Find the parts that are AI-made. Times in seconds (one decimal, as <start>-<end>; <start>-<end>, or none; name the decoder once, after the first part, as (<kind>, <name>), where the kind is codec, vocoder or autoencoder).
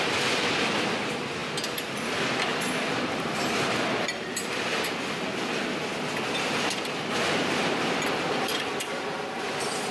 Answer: 0.0-1.4 (vocoder, BigVGAN v2); 1.9-2.5; 4.0-4.7; 7.0-9.9